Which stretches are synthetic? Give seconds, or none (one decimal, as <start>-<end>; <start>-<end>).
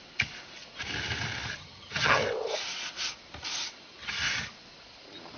1.6-2.2; 4.0-4.5